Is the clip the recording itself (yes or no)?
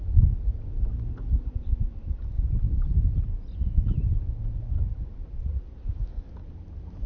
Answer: yes